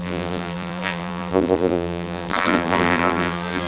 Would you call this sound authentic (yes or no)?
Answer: no